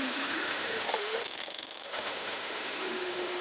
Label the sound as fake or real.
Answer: fake